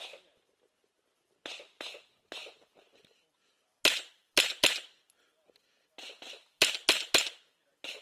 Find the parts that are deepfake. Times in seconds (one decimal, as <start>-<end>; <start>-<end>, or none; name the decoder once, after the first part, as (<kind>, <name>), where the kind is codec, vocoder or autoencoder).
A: none